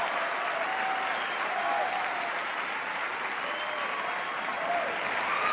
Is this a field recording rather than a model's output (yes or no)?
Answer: yes